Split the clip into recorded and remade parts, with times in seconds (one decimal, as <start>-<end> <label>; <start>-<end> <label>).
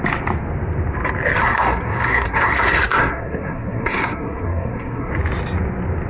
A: 0.0-1.4 recorded; 1.4-5.1 remade; 5.1-6.1 recorded